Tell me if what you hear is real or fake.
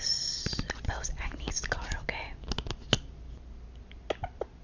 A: real